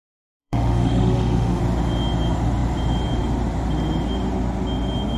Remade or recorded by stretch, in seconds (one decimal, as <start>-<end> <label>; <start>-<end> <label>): 0.0-0.4 recorded; 0.4-1.6 remade; 1.6-5.2 recorded